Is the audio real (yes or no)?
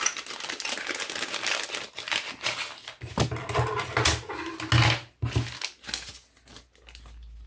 yes